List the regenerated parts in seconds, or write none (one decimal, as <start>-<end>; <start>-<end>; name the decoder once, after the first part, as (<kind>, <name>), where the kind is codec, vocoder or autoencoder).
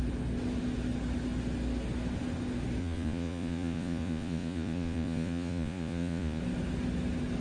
2.8-6.4 (vocoder, Vocos)